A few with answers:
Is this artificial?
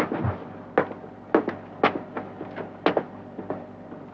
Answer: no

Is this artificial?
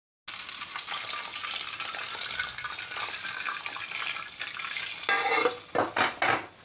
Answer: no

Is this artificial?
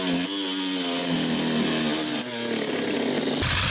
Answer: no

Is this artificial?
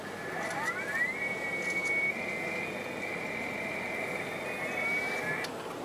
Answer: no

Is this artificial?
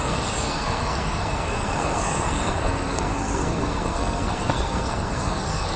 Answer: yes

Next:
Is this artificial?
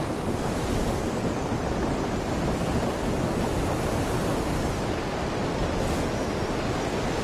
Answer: no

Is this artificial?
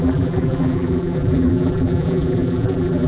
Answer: yes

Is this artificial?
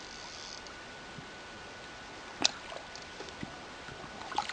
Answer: no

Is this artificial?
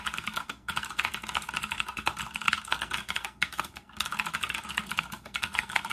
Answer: yes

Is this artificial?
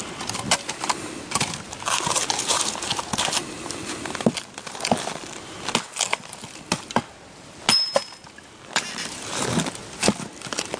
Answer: no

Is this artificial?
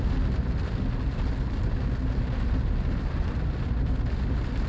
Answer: no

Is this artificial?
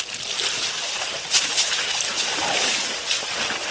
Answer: no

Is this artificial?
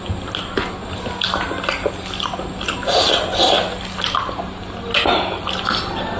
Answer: no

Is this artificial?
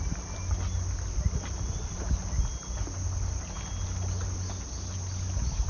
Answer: no